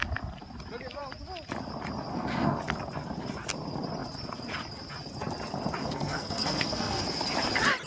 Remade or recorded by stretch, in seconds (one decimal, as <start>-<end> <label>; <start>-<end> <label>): 0.0-2.1 recorded; 2.1-2.6 remade; 2.6-5.8 recorded; 5.8-7.0 remade; 7.0-7.9 recorded